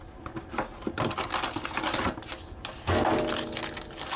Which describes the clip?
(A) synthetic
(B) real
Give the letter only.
B